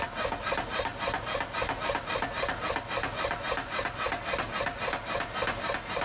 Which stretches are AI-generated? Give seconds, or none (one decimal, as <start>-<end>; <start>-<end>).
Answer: none